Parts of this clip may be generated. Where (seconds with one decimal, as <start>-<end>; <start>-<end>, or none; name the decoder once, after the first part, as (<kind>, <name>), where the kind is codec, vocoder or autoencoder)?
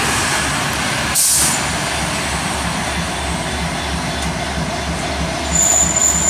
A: 1.4-2.4 (vocoder, BigVGAN v2)